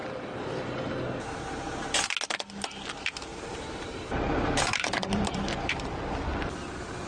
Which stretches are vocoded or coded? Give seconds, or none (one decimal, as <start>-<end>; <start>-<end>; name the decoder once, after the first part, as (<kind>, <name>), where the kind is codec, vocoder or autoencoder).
0.0-1.0 (vocoder, BigVGAN v2); 3.3-6.0